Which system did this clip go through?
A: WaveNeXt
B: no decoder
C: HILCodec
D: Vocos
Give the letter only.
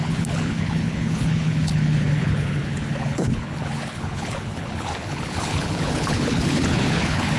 C